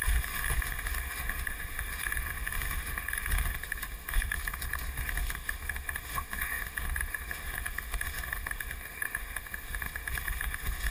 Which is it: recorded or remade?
remade